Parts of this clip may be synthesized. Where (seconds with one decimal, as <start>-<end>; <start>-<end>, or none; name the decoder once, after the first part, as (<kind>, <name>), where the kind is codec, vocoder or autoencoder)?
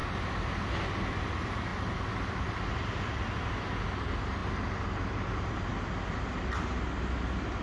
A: none